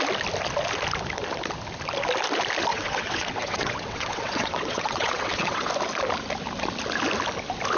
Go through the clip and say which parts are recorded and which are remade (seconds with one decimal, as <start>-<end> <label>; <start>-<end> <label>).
0.0-2.7 recorded; 2.7-5.7 remade; 5.7-7.8 recorded